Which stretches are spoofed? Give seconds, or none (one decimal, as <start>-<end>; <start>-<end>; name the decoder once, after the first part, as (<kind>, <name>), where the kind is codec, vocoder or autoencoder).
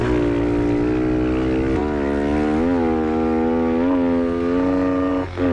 none